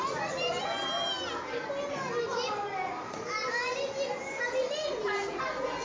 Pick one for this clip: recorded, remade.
recorded